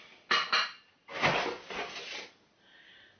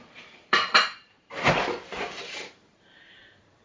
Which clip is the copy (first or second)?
second